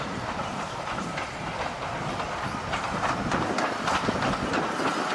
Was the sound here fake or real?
real